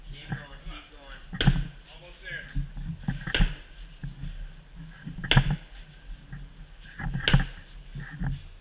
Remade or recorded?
recorded